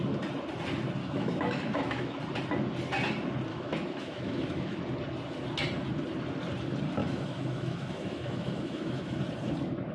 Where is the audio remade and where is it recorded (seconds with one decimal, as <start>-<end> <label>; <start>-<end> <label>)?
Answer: 0.0-1.0 recorded; 1.0-2.2 remade; 2.2-3.5 recorded; 3.5-4.8 remade; 4.8-7.0 recorded; 7.0-9.2 remade; 9.2-9.9 recorded